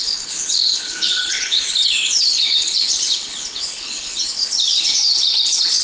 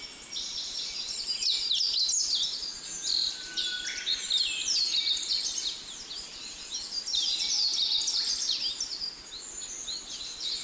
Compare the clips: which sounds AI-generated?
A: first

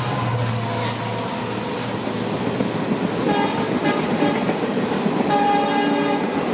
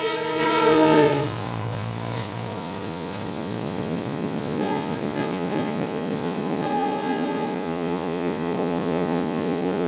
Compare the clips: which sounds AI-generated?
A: second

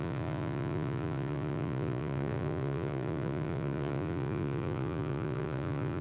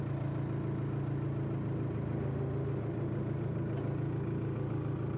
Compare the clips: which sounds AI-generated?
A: first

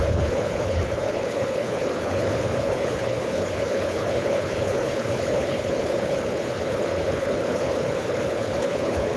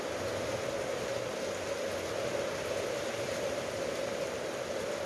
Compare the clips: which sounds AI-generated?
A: first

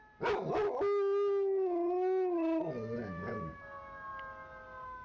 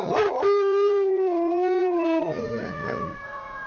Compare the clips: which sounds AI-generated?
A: second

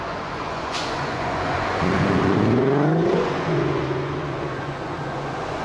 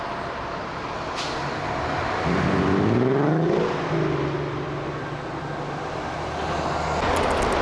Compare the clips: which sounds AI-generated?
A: first